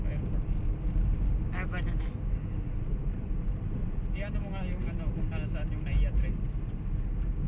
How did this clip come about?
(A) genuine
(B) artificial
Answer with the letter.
A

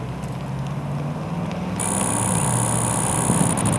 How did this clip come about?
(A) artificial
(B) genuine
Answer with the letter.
B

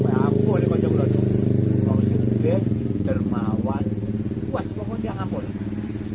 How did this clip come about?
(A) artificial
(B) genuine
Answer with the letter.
B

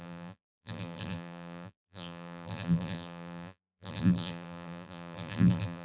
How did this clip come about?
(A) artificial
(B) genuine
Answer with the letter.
A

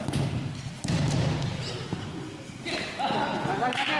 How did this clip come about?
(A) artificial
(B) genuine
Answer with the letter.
B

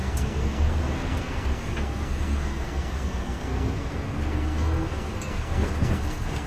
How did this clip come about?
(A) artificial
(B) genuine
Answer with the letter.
A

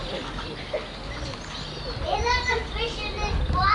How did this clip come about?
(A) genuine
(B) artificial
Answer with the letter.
A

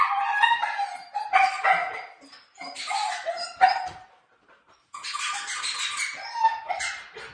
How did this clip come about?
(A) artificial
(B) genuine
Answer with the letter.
B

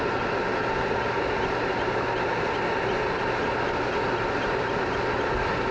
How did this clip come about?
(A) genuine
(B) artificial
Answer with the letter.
A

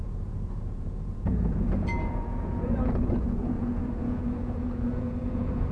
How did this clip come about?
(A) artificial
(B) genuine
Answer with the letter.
A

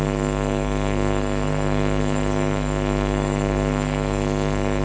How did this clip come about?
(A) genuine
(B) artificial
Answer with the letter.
B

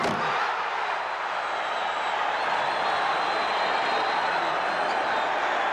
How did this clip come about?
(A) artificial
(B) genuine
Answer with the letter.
A